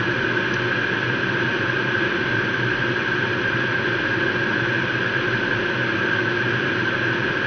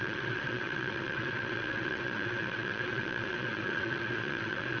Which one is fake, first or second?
second